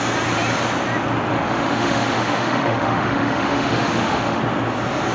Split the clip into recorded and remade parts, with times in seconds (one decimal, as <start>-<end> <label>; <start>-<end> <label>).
0.0-1.3 recorded; 1.3-4.4 remade; 4.4-5.1 recorded